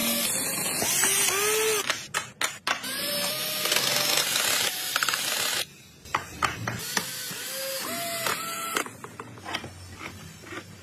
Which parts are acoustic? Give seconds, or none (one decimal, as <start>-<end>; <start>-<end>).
0.0-10.8